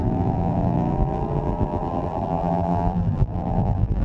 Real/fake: fake